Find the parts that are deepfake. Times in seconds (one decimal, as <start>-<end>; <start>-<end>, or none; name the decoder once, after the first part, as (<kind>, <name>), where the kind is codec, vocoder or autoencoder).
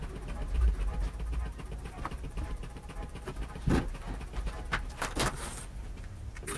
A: 0.0-6.6 (vocoder, BigVGAN v2)